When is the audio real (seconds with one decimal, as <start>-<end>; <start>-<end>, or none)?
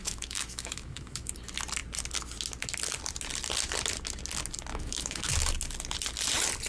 1.3-4.7; 5.3-6.7